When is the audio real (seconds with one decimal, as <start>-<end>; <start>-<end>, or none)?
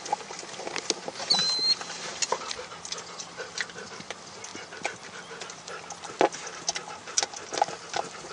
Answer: 0.0-8.3